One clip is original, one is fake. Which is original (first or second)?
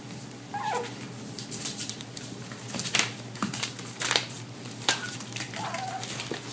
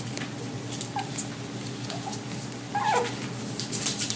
second